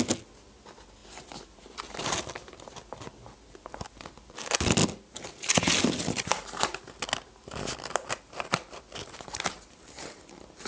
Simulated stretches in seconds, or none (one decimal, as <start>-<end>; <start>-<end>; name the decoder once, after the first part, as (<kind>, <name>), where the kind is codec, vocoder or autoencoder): none